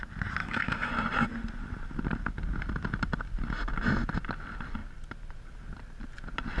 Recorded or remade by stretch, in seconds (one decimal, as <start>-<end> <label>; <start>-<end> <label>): 0.0-0.4 recorded; 0.4-0.9 remade; 0.9-6.6 recorded

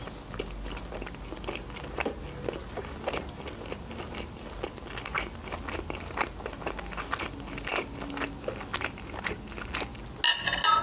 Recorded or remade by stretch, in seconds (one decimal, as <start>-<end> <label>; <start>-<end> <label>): 0.0-10.8 recorded

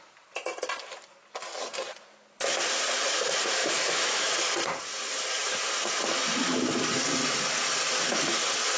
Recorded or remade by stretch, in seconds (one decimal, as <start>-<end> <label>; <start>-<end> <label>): 0.0-3.6 recorded; 3.6-4.3 remade; 4.3-8.8 recorded

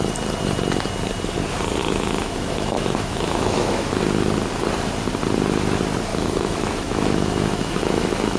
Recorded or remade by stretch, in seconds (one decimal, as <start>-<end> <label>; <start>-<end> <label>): 0.0-1.8 recorded; 1.8-4.0 remade; 4.0-6.1 recorded; 6.1-8.4 remade

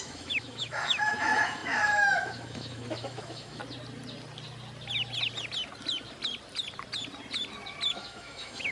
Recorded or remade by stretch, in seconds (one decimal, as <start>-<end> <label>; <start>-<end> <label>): 0.0-3.6 remade; 3.6-7.9 recorded; 7.9-8.7 remade